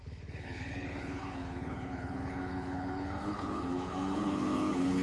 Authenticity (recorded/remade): remade